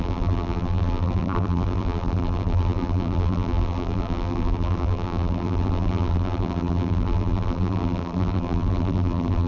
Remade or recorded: remade